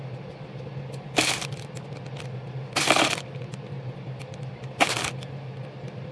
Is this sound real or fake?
real